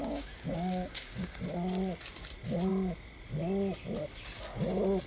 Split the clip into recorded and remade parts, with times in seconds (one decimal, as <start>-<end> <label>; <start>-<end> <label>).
0.0-1.4 remade; 1.4-5.1 recorded